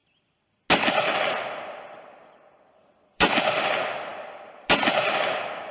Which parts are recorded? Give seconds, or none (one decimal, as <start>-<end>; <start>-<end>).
0.0-2.8; 3.3-4.1